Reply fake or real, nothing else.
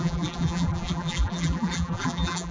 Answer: fake